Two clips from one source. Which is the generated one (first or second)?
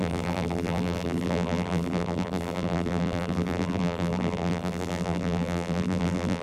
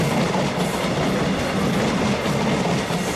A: first